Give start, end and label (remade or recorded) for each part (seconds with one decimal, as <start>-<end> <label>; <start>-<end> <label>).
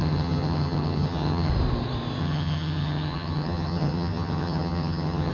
0.0-1.5 remade; 1.5-2.2 recorded; 2.2-5.3 remade